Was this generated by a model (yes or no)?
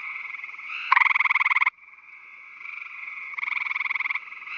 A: yes